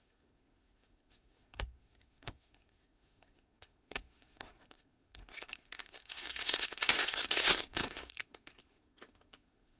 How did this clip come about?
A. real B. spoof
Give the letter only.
B